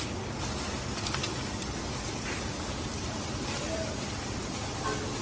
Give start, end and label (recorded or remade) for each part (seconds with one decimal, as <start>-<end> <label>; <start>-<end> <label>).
0.0-5.2 recorded